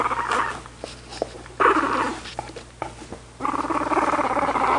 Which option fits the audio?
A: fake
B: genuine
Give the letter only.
B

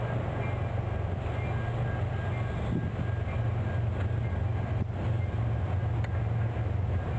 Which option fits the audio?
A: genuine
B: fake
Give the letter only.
A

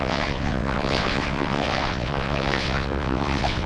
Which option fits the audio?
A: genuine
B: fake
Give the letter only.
B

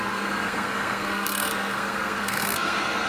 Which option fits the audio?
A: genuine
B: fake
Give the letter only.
B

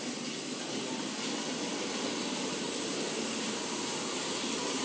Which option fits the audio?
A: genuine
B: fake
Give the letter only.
A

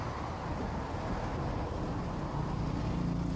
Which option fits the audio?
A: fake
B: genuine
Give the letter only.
B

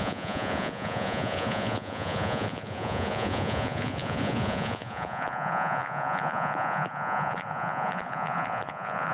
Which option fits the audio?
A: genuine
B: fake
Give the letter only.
B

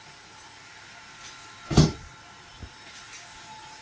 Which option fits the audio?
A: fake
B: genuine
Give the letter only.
B